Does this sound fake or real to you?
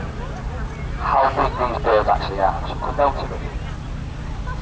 real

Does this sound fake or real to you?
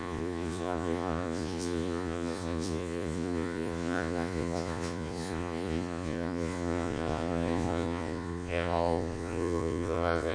fake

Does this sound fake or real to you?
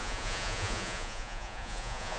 fake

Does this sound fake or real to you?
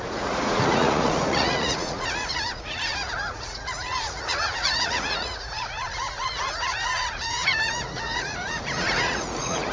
fake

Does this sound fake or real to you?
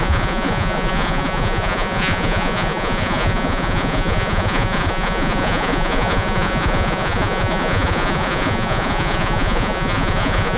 fake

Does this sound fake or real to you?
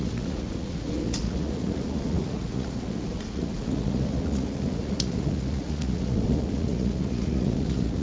fake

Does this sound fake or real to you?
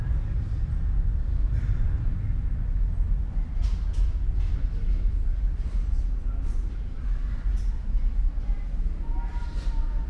real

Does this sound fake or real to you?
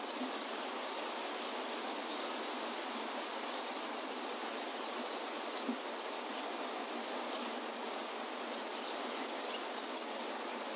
real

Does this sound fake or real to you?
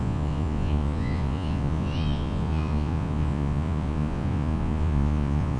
fake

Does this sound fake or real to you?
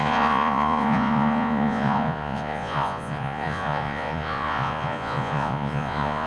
fake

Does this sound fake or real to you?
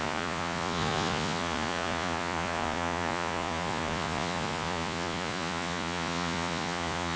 fake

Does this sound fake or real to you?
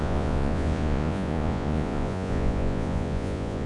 fake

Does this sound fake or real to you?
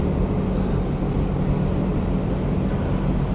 real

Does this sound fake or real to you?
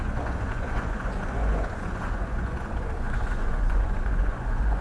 fake